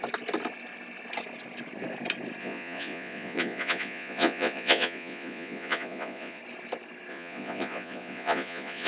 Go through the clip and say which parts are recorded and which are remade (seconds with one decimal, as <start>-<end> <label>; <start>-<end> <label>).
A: 0.0-2.4 recorded; 2.4-6.4 remade; 6.4-7.1 recorded; 7.1-8.9 remade